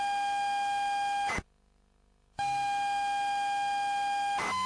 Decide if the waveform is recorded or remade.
remade